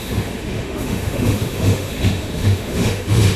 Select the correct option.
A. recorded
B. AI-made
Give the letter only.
B